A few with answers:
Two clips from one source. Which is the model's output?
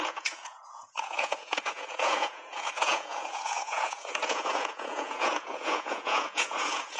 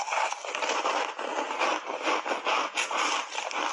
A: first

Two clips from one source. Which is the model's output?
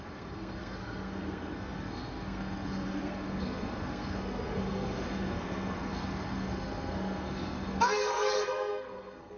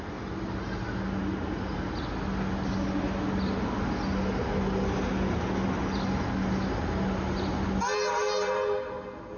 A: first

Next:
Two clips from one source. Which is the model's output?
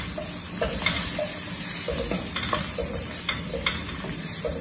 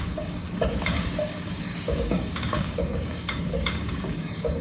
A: second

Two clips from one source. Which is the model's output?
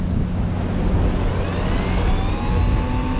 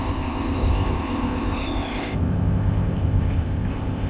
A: second